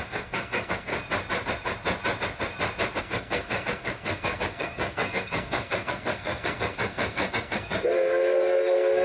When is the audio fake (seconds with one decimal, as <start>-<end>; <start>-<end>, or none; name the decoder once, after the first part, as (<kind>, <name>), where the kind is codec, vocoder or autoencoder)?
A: 0.0-0.9 (codec, SNAC); 3.0-9.0